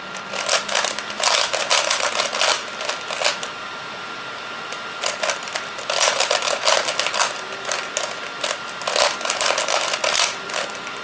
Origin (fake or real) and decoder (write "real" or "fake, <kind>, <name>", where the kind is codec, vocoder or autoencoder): real